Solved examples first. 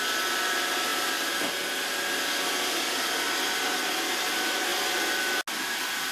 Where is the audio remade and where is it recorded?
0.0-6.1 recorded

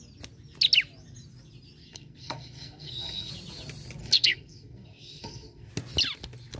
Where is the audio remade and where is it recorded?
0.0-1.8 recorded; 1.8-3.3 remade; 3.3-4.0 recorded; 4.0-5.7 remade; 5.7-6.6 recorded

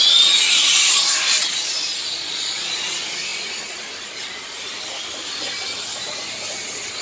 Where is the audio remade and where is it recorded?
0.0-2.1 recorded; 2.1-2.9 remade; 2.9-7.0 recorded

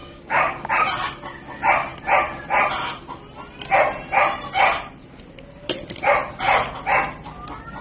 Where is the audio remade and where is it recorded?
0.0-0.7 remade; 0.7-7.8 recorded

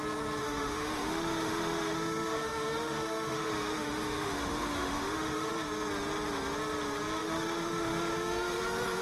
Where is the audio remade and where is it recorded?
0.0-0.4 recorded; 0.4-5.5 remade; 5.5-7.2 recorded; 7.2-8.6 remade; 8.6-9.0 recorded

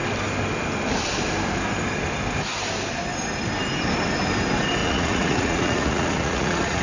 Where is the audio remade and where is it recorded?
0.0-4.8 recorded; 4.8-6.8 remade

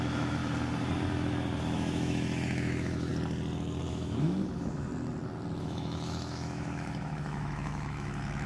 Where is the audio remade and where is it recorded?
0.0-0.4 remade; 0.4-1.6 recorded; 1.6-3.1 remade; 3.1-3.9 recorded; 3.9-4.9 remade; 4.9-5.6 recorded; 5.6-8.5 remade

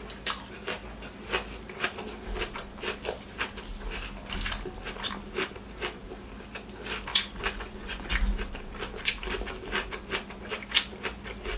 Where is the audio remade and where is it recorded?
0.0-7.1 recorded; 7.1-8.0 remade; 8.0-11.6 recorded